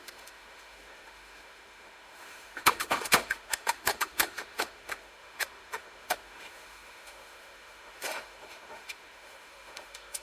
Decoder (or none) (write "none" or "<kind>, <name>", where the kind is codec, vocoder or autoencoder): autoencoder, DAC-VAE